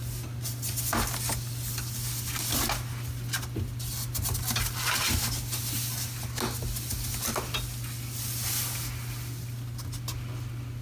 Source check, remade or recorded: recorded